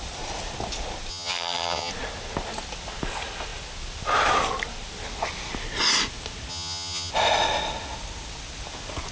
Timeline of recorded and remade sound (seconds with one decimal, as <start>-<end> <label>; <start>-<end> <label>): 0.0-1.1 recorded; 1.1-1.9 remade; 1.9-6.5 recorded; 6.5-7.1 remade; 7.1-9.1 recorded